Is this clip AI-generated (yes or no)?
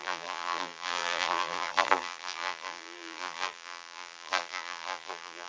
yes